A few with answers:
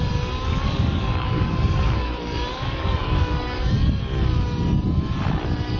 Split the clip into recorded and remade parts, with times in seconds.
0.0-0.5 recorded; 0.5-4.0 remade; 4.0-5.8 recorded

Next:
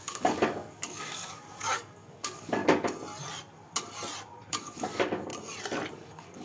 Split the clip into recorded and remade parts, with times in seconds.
0.0-2.6 remade; 2.6-4.5 recorded; 4.5-5.3 remade; 5.3-5.9 recorded; 5.9-6.4 remade